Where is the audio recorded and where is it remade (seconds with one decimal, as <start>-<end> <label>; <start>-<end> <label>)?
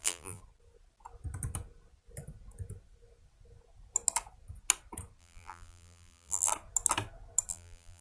0.0-0.4 remade; 0.4-5.2 recorded; 5.2-6.5 remade; 6.5-7.5 recorded; 7.5-8.0 remade